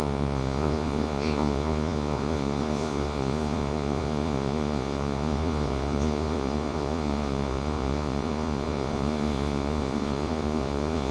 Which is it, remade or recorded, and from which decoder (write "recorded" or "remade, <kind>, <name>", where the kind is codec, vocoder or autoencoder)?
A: remade, vocoder, Vocos